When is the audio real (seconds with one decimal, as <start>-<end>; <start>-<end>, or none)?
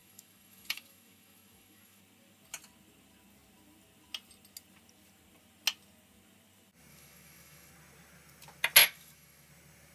2.0-6.9; 7.7-8.8; 9.5-9.9